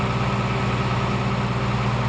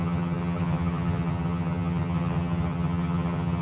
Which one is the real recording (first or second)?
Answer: first